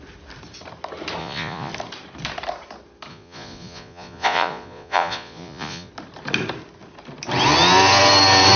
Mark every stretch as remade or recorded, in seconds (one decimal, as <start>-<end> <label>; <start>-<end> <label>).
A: 0.0-1.2 recorded; 1.2-1.7 remade; 1.7-3.1 recorded; 3.1-5.9 remade; 5.9-8.6 recorded